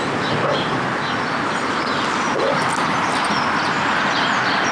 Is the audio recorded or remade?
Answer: recorded